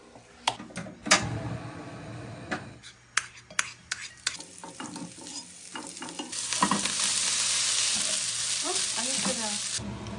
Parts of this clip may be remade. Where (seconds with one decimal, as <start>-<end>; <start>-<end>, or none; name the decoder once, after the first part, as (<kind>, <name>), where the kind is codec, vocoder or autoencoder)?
none